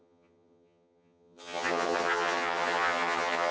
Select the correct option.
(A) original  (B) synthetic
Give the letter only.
B